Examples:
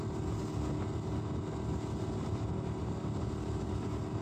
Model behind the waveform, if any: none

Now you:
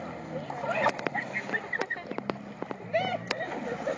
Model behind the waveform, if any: none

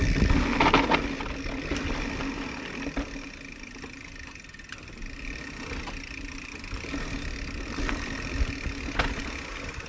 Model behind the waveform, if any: none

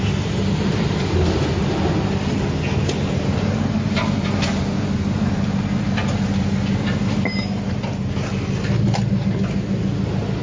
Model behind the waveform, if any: none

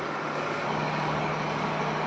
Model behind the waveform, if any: codec, DAC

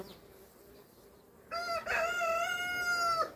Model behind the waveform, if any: none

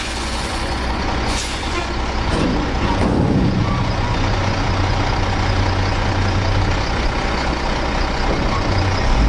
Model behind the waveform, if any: vocoder, Vocos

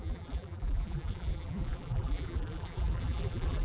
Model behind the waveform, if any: vocoder, BigVGAN v2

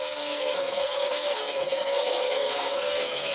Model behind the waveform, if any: codec, SNAC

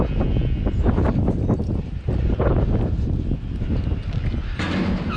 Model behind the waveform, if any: none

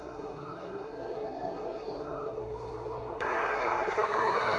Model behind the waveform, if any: codec, SNAC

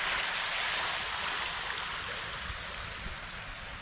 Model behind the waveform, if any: none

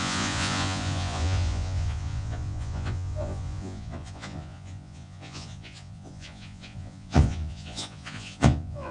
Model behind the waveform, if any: vocoder, Vocos